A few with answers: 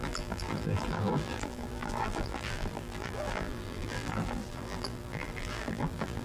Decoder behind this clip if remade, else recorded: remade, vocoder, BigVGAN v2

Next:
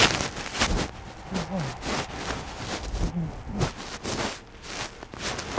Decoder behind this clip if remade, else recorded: recorded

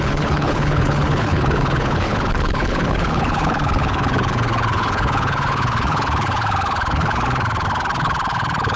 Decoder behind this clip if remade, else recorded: remade, codec, HILCodec